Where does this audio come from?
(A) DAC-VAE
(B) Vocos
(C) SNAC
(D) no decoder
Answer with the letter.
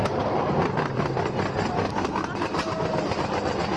D